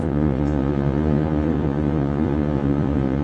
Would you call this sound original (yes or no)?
no